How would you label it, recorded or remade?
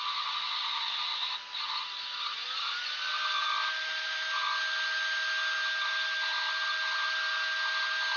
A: recorded